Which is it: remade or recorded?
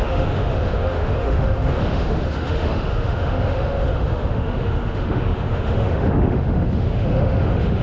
remade